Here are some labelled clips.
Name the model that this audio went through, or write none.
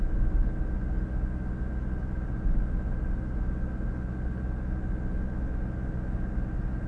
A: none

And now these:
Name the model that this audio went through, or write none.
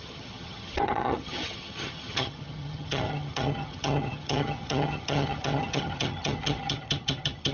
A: vocoder, HiFi-GAN